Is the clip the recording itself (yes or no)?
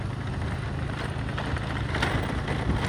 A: yes